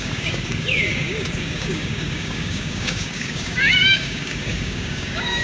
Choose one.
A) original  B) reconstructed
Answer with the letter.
B